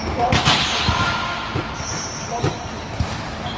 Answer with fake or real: real